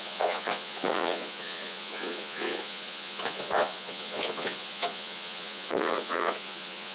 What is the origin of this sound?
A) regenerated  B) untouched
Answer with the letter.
A